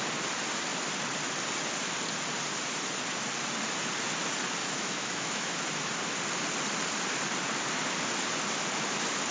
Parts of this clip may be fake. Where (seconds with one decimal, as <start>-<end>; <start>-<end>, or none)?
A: 4.6-5.5